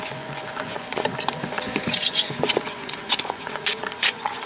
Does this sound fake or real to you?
fake